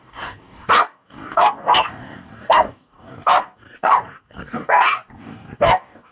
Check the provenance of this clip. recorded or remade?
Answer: remade